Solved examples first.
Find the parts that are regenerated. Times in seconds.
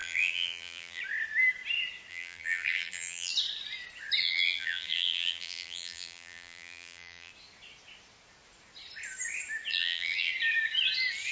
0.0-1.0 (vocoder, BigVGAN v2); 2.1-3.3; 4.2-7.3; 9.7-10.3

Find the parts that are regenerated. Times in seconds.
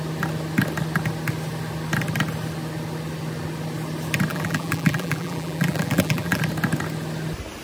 4.3-6.4 (vocoder, BigVGAN v2)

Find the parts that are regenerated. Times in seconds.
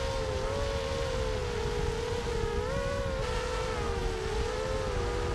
none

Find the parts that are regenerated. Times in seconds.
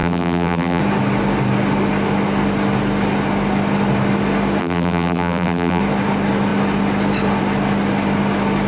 0.0-0.8 (vocoder, BigVGAN v2); 4.6-5.8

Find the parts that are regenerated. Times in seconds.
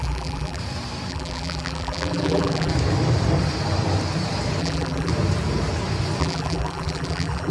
0.0-0.6 (vocoder, BigVGAN v2); 1.1-2.7; 4.6-5.1; 6.2-7.5